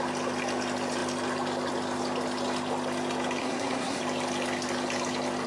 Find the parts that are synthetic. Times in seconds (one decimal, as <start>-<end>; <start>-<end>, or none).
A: 3.4-4.0